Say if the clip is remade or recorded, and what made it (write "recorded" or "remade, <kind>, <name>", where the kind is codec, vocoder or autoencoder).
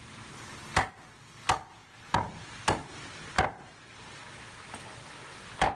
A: recorded